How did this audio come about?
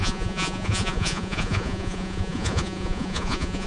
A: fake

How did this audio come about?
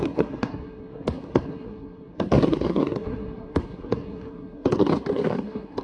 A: fake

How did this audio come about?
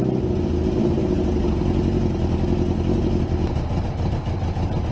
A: real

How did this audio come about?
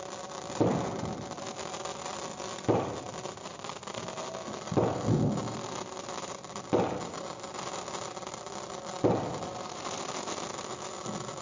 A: real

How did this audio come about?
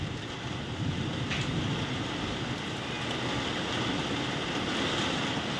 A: real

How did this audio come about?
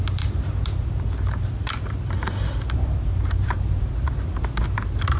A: fake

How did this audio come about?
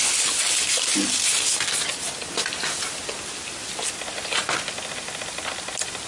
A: real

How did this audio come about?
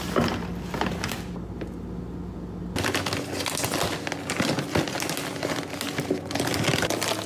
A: real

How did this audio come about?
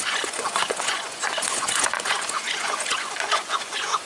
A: fake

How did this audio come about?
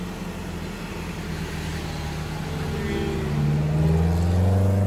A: real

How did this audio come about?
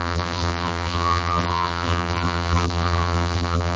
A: fake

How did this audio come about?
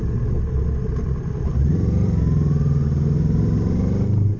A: real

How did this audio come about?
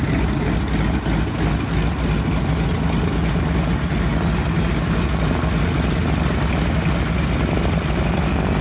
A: real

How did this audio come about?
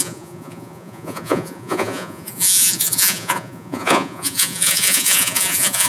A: fake